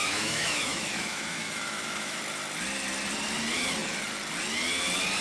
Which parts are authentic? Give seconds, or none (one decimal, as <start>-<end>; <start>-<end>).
2.2-5.2